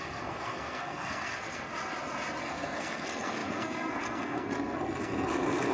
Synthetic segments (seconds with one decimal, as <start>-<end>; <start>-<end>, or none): 0.0-1.7; 2.4-5.7